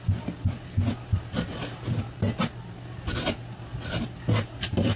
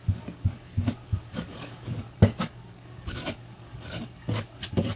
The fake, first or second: second